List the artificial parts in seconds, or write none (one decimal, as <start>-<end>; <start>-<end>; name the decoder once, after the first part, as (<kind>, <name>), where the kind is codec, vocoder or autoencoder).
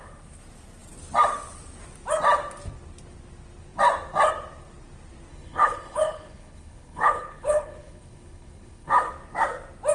5.3-8.9 (codec, HILCodec)